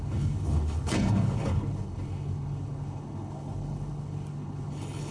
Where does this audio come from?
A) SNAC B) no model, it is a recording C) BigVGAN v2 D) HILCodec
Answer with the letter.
D